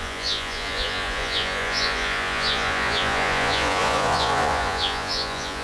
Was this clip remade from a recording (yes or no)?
yes